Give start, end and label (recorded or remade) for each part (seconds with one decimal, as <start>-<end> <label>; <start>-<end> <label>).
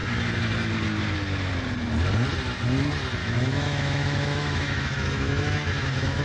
0.0-3.2 recorded; 3.2-6.2 remade